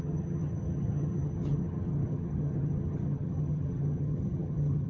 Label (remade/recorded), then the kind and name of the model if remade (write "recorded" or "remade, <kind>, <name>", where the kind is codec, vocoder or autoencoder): remade, vocoder, HiFi-GAN